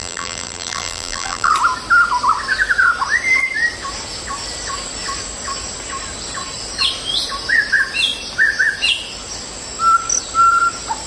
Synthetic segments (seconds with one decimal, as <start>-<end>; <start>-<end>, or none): 0.0-1.5